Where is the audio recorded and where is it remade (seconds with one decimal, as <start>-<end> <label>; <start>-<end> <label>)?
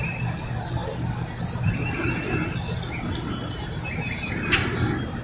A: 0.0-5.2 recorded